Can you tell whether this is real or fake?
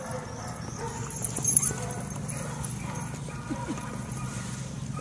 real